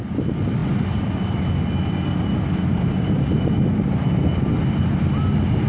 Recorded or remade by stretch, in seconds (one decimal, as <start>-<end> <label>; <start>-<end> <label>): 0.0-5.7 recorded